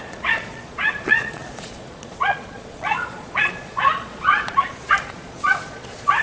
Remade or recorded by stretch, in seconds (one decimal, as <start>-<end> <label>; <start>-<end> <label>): 0.0-6.2 remade

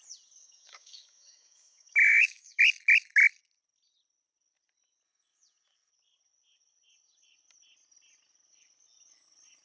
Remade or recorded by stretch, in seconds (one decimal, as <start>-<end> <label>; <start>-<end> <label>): 0.0-0.4 recorded; 0.4-2.6 remade; 2.6-9.6 recorded

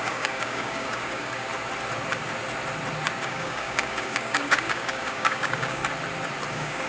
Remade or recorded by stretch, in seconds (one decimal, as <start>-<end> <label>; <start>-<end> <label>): 0.0-1.5 remade; 1.5-3.2 recorded; 3.2-5.8 remade; 5.8-6.5 recorded; 6.5-6.9 remade

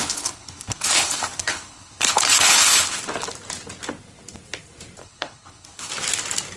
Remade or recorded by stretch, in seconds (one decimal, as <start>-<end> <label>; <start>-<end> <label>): 0.0-3.0 remade; 3.0-5.0 recorded; 5.0-5.9 remade; 5.9-6.6 recorded

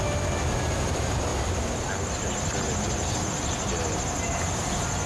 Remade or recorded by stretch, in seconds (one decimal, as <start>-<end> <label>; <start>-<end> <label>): 0.0-5.1 recorded

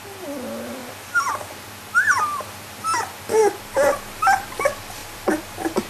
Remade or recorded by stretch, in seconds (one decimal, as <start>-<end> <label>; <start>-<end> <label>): 0.0-0.8 recorded; 0.8-1.3 remade; 1.3-5.0 recorded; 5.0-5.9 remade